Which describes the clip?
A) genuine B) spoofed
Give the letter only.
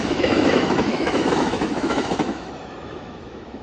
B